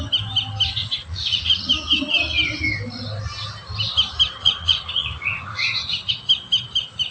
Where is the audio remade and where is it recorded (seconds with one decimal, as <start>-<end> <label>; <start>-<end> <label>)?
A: 0.0-0.8 recorded; 0.8-1.7 remade; 1.7-4.4 recorded; 4.4-6.1 remade; 6.1-7.1 recorded